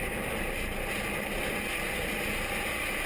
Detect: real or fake real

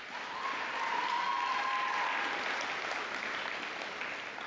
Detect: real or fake real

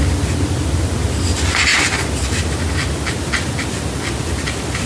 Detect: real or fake real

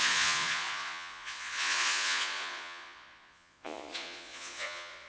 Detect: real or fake fake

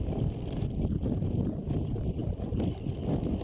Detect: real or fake real